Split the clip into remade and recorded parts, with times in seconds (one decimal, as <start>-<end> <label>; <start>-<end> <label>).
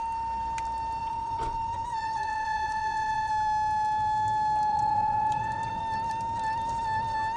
0.0-1.0 recorded; 1.0-3.3 remade; 3.3-4.7 recorded; 4.7-5.8 remade; 5.8-7.4 recorded